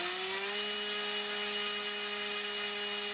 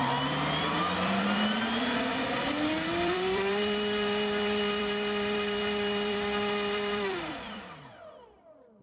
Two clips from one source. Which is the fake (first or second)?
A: second